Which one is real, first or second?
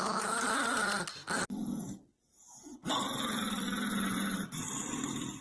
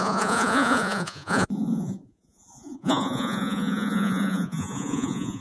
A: first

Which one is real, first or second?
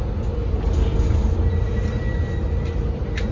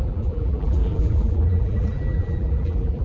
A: first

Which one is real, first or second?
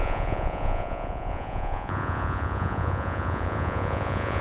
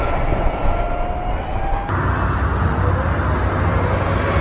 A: second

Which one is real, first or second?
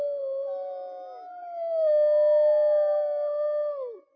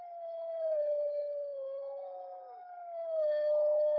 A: first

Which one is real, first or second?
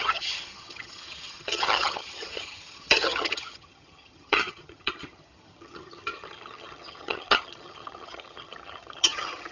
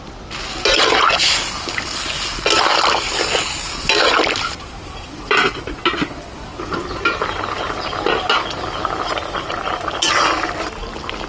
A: second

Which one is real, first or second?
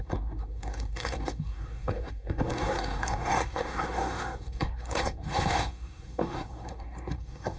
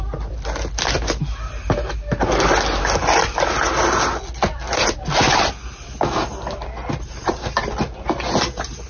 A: second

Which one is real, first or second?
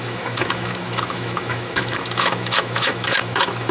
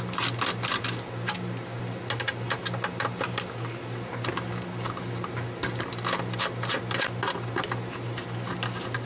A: second